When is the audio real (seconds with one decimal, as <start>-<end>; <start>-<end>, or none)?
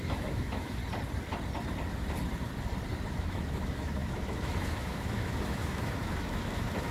0.8-3.1